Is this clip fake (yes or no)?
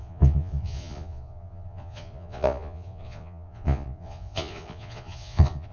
yes